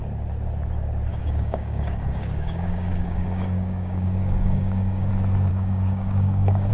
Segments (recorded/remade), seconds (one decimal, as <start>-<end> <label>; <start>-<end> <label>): 0.0-1.1 recorded; 1.1-5.1 remade; 5.1-5.5 recorded; 5.5-6.7 remade

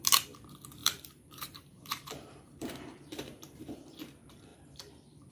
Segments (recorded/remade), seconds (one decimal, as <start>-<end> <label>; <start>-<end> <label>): 0.0-0.8 recorded; 0.8-4.0 remade; 4.0-4.5 recorded; 4.5-5.3 remade

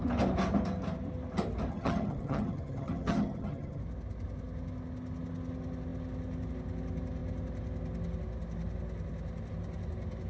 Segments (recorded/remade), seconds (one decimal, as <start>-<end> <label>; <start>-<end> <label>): 0.0-1.7 recorded; 1.7-3.8 remade; 3.8-10.3 recorded

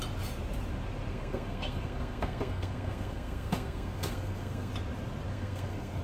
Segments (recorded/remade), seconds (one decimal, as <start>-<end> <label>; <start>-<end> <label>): 0.0-1.1 recorded; 1.1-4.7 remade; 4.7-5.3 recorded; 5.3-6.0 remade

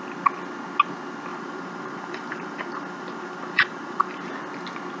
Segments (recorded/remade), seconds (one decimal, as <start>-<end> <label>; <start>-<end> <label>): 0.0-1.3 recorded; 1.3-4.3 remade; 4.3-5.0 recorded

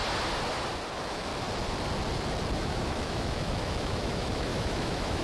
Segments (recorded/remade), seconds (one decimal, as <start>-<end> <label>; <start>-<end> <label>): 0.0-0.9 recorded; 0.9-1.3 remade; 1.3-2.5 recorded; 2.5-5.2 remade

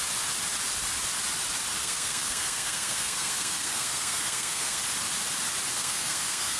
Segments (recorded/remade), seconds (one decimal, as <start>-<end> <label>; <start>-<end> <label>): 0.0-1.8 recorded; 1.8-4.8 remade; 4.8-5.7 recorded; 5.7-6.6 remade

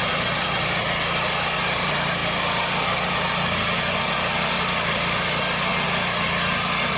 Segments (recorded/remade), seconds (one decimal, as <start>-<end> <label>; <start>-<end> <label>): 0.0-7.0 recorded